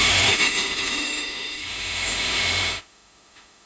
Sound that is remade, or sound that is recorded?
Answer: remade